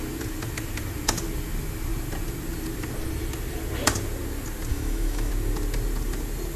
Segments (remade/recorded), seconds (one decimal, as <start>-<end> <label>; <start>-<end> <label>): 0.0-4.7 recorded; 4.7-5.3 remade; 5.3-6.6 recorded